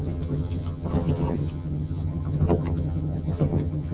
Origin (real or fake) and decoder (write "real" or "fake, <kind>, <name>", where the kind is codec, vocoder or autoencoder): fake, vocoder, HiFi-GAN